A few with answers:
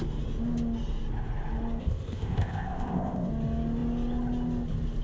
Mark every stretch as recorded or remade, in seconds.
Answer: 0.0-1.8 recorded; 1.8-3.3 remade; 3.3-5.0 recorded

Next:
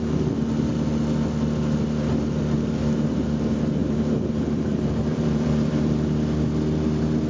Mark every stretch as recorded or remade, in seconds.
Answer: 0.0-3.8 recorded; 3.8-5.9 remade; 5.9-7.3 recorded

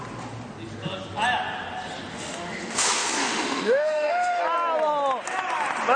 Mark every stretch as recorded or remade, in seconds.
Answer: 0.0-2.1 recorded; 2.1-4.4 remade; 4.4-6.0 recorded

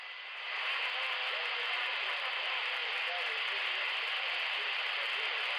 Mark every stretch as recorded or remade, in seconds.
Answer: 0.0-5.6 recorded

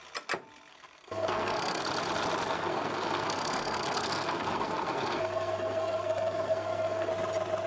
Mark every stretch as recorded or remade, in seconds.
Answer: 0.0-0.7 recorded; 0.7-1.8 remade; 1.8-2.5 recorded; 2.5-7.1 remade; 7.1-7.7 recorded

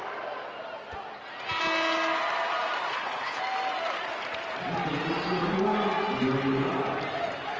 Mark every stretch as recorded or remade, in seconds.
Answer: 0.0-2.9 recorded; 2.9-3.4 remade; 3.4-7.6 recorded

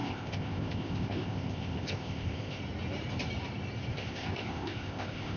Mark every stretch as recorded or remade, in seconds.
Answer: 0.0-2.6 remade; 2.6-3.9 recorded; 3.9-5.4 remade